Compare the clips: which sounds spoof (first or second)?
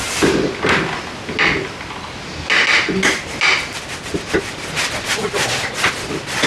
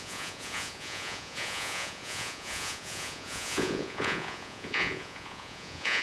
second